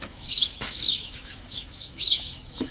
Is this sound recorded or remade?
remade